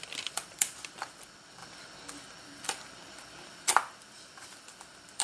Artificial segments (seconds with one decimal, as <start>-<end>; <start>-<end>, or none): 0.0-5.2